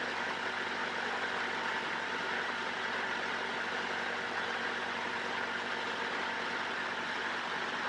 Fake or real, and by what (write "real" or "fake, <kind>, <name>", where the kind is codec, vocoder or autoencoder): real